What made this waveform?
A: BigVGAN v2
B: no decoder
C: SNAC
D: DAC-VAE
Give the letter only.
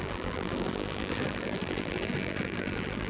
A